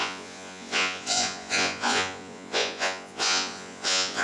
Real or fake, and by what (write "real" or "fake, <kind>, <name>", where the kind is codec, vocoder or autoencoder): fake, vocoder, Vocos